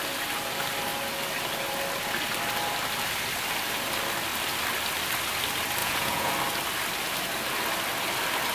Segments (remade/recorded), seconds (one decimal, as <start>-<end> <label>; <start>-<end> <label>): 0.0-5.8 recorded; 5.8-6.3 remade; 6.3-8.5 recorded